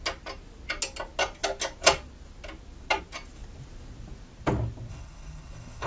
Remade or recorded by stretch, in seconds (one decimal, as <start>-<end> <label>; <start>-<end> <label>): 0.0-4.9 recorded; 4.9-5.9 remade